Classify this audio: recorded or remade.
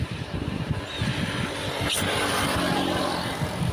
remade